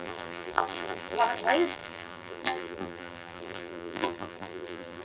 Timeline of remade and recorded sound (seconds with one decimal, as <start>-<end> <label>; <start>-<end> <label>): 0.0-5.0 remade